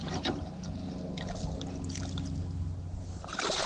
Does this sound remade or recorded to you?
recorded